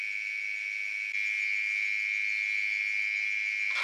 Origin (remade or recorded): recorded